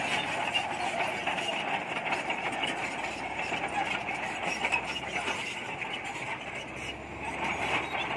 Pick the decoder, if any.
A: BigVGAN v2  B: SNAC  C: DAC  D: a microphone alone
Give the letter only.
D